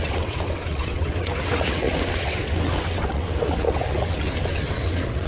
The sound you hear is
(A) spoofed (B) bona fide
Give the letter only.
A